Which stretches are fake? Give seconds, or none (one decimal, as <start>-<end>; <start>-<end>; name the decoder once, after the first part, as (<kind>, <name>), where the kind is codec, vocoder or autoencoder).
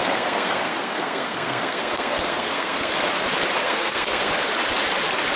0.0-2.9 (codec, SNAC); 3.6-4.3